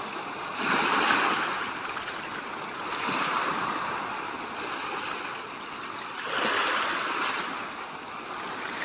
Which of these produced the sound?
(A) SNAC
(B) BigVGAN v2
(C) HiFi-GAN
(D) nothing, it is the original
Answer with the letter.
D